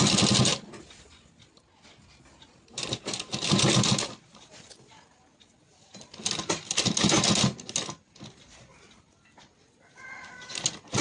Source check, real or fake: real